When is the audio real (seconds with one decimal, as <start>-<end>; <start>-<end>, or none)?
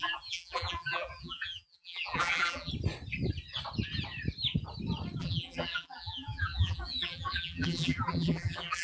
2.7-5.2